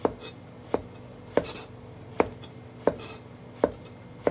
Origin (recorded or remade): recorded